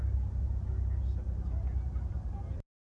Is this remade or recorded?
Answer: recorded